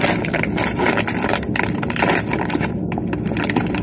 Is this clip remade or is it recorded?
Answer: recorded